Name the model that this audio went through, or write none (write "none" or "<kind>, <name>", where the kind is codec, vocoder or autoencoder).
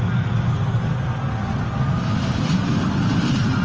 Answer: none